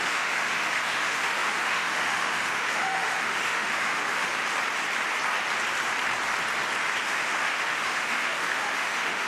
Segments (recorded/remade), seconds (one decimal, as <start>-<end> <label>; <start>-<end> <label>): 0.0-4.3 remade; 4.3-7.0 recorded; 7.0-9.3 remade